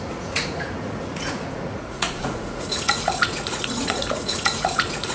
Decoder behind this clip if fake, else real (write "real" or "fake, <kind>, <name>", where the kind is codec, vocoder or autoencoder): fake, vocoder, Vocos